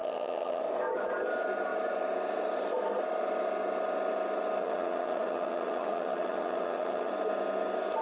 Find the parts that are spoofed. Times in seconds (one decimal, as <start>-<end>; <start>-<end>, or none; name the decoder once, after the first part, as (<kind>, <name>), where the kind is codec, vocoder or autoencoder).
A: 0.0-0.6 (vocoder, HiFi-GAN); 4.6-7.1

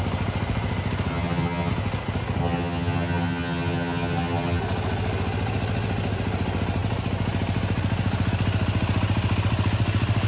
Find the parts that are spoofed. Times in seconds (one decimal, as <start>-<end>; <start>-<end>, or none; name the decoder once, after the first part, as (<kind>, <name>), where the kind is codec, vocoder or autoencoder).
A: 1.1-1.7 (vocoder, HiFi-GAN); 2.4-4.6

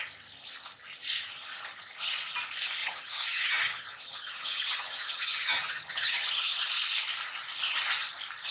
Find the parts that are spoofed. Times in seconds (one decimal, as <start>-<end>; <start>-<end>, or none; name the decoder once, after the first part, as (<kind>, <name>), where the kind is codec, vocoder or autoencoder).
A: 2.8-6.7 (vocoder, HiFi-GAN)

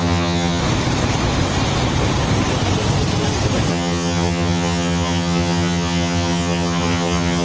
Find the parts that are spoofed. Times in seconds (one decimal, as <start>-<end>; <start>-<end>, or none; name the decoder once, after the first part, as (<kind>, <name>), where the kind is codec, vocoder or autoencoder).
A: 0.0-0.6 (vocoder, HiFi-GAN); 3.7-7.4

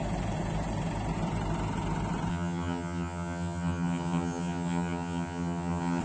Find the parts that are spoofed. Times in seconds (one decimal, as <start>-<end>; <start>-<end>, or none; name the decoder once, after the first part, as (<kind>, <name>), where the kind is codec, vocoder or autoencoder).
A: 2.3-6.0 (vocoder, HiFi-GAN)